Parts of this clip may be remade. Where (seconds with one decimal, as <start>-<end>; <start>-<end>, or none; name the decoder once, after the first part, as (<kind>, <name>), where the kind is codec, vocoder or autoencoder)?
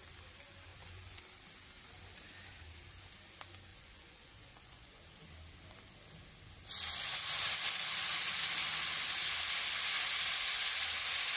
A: 0.7-1.2 (vocoder, Vocos); 3.7-5.0